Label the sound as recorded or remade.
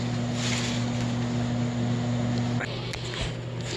recorded